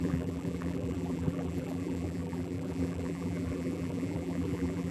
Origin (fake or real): fake